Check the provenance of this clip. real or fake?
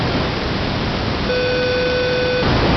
real